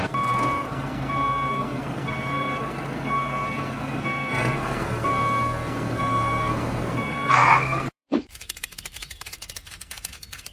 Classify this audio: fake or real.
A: fake